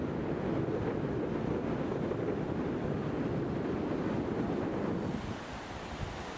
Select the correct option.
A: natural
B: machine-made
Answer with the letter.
A